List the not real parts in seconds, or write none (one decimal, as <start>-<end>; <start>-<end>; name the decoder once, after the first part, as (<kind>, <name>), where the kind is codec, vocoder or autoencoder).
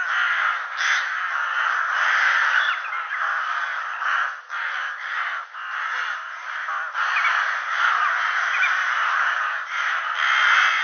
none